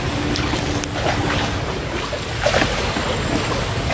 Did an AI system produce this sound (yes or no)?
no